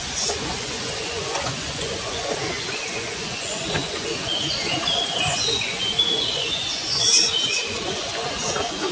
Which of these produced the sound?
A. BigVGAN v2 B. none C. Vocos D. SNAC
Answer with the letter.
C